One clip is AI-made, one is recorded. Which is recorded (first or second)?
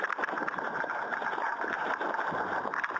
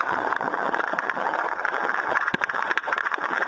first